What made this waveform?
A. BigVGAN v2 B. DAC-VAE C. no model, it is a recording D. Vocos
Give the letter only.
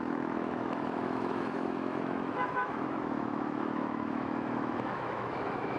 B